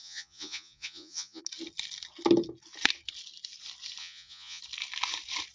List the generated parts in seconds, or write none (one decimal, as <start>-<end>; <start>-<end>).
0.0-1.4; 4.0-4.6